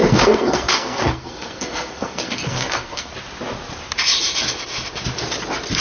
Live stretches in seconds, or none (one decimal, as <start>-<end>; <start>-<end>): 3.1-5.8

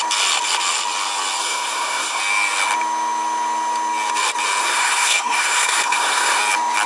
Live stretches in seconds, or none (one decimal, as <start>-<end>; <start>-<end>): 0.0-1.4; 2.2-4.6; 6.4-6.9